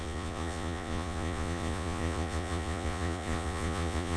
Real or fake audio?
fake